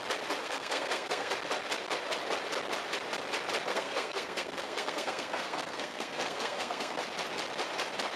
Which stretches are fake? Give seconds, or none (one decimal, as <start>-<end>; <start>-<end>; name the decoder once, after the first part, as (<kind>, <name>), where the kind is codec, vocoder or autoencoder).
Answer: 0.4-1.3 (codec, SNAC); 3.7-7.0